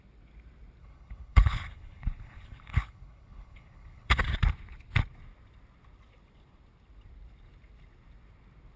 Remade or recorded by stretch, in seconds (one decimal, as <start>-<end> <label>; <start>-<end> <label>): 0.0-0.8 recorded; 0.8-4.2 remade; 4.2-8.8 recorded